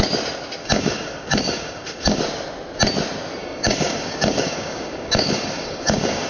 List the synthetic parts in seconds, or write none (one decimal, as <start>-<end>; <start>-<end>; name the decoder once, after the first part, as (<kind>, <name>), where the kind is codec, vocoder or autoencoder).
0.6-2.2 (codec, DAC); 3.4-6.3